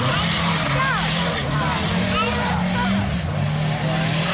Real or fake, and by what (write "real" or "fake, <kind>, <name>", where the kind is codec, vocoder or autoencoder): real